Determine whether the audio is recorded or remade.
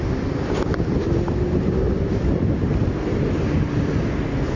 recorded